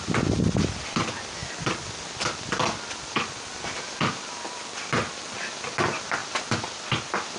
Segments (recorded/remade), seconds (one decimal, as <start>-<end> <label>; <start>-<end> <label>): 0.0-7.4 recorded